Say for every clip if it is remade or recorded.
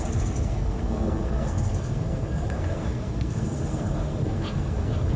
remade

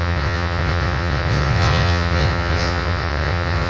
remade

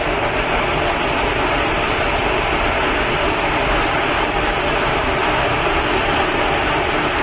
remade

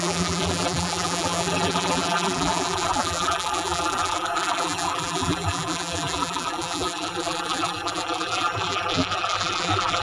remade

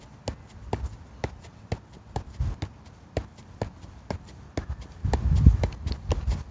recorded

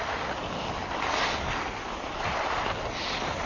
recorded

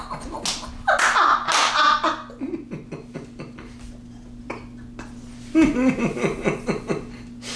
recorded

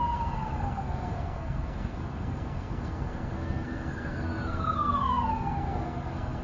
remade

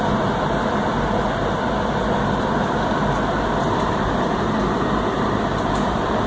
recorded